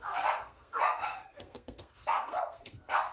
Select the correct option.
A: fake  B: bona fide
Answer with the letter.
A